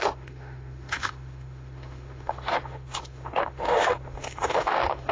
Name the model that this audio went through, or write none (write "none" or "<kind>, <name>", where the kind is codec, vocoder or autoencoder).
autoencoder, DAC-VAE